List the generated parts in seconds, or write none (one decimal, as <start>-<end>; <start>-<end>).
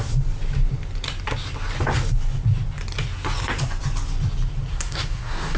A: 4.7-5.6